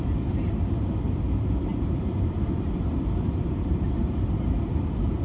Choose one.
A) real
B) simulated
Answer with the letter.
B